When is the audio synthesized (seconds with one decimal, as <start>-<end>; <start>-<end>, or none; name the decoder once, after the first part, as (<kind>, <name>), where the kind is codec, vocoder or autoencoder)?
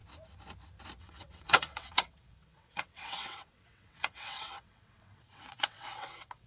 1.0-6.5 (vocoder, WaveNeXt)